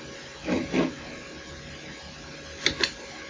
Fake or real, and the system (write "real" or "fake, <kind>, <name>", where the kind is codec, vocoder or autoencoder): real